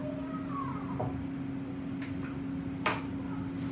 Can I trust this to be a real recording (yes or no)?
yes